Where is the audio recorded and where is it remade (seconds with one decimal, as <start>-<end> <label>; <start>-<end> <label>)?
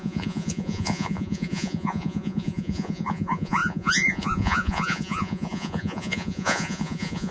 0.0-7.3 remade